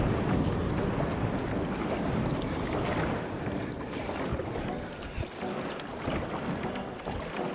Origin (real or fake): real